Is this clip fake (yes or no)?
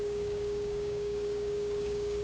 yes